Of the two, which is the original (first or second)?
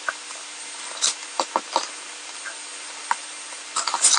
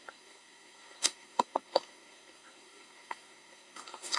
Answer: first